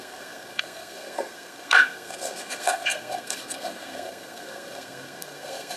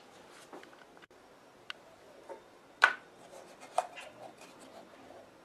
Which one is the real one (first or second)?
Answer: second